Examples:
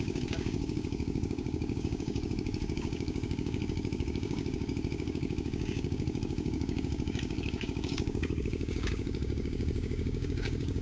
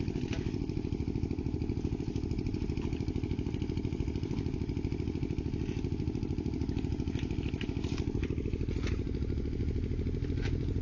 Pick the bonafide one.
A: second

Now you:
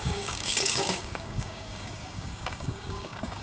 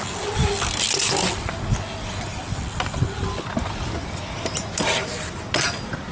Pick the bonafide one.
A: second